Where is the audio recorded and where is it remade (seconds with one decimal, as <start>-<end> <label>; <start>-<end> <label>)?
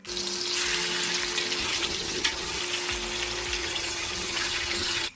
0.0-1.6 recorded; 1.6-2.6 remade; 2.6-3.6 recorded; 3.6-5.2 remade